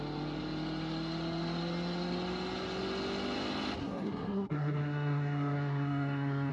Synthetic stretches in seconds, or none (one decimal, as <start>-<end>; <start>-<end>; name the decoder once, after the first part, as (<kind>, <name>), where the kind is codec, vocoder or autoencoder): 3.8-6.5 (codec, SNAC)